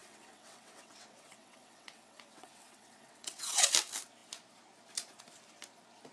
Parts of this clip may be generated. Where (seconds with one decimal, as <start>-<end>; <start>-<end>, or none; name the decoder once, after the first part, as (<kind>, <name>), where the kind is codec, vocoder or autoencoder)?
0.0-3.7 (vocoder, WaveNeXt)